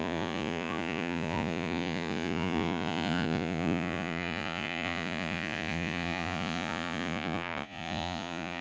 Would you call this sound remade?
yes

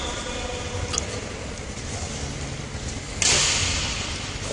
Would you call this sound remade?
no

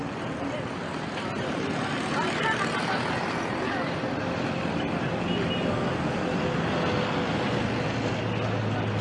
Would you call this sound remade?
no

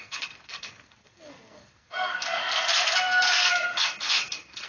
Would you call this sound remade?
yes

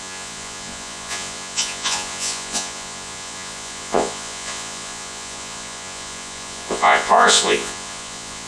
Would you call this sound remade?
yes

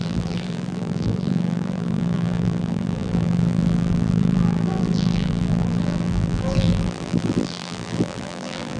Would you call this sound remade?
yes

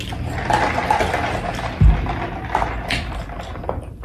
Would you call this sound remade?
no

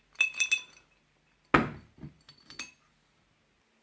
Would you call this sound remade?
no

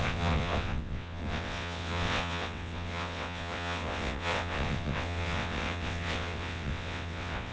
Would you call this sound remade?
yes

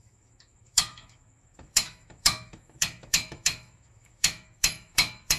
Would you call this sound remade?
yes